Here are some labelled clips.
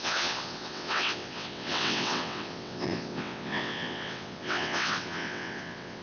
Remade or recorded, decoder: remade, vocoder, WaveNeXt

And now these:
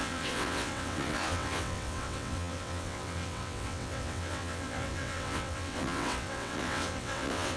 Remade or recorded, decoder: remade, vocoder, WaveNeXt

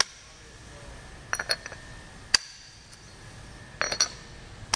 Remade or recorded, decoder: recorded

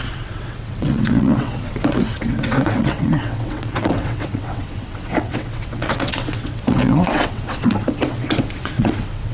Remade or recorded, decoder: remade, vocoder, WaveNeXt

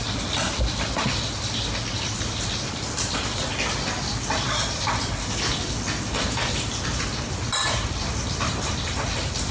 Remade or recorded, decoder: recorded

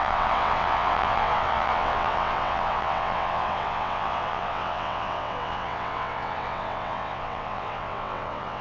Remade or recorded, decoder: remade, vocoder, WaveNeXt